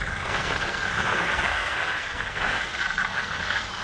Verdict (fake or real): fake